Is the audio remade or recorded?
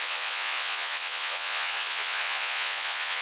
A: remade